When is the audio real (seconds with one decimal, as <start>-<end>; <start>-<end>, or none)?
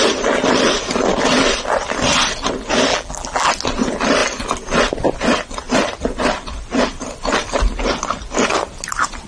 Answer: 0.0-2.9; 3.5-9.3